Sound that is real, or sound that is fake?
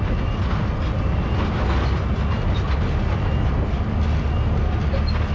real